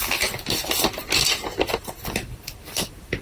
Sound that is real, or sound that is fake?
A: real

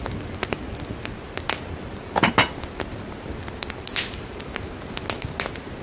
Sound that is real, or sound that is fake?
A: real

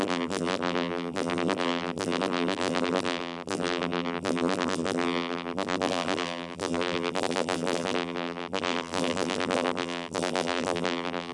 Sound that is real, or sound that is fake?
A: fake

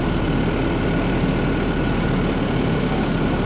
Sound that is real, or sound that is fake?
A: real